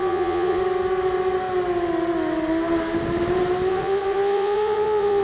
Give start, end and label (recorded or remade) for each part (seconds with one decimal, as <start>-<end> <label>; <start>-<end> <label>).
0.0-0.6 remade; 0.6-3.7 recorded; 3.7-5.2 remade